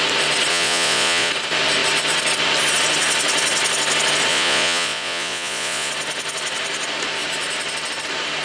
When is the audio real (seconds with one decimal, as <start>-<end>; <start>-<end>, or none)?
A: 0.0-0.5; 1.3-4.3; 5.9-8.4